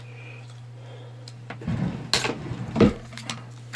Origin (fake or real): real